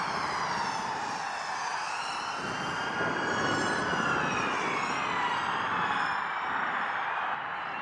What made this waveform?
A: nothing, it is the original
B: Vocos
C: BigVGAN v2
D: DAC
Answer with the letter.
A